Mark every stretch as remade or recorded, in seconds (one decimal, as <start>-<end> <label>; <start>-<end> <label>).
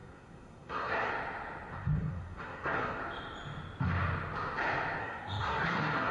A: 0.0-1.1 remade; 1.1-1.7 recorded; 1.7-3.0 remade; 3.0-5.0 recorded; 5.0-6.1 remade